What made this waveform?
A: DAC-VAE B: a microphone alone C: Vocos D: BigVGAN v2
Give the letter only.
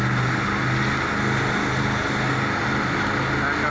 B